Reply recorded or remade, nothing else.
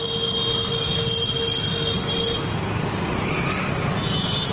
recorded